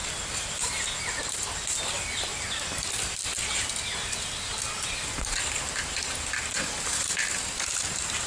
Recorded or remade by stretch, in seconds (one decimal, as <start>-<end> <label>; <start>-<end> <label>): 0.0-8.3 recorded